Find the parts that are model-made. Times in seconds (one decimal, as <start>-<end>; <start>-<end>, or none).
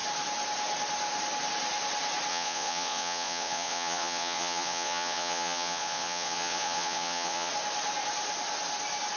2.3-7.5